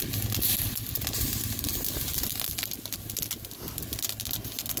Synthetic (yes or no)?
no